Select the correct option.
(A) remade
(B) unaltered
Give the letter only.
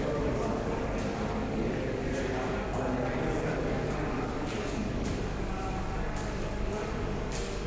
A